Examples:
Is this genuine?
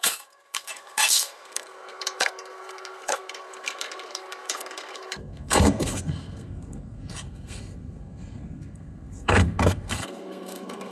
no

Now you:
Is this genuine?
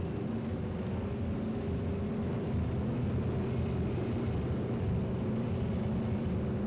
yes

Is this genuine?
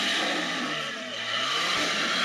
yes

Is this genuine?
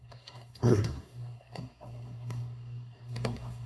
no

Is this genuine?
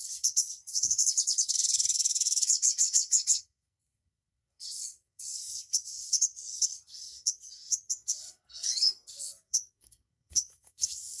no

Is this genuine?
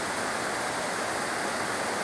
yes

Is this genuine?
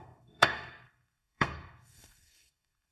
no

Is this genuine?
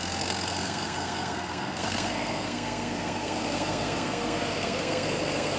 no